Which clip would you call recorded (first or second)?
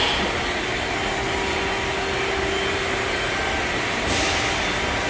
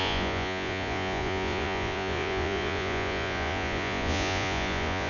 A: first